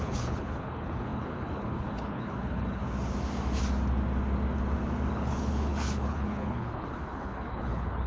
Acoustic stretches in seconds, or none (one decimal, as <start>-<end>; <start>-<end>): 2.8-5.1